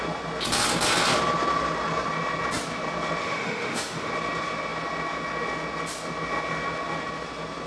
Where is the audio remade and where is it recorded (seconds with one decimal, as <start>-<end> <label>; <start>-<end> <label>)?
0.0-3.2 recorded; 3.2-4.1 remade; 4.1-7.7 recorded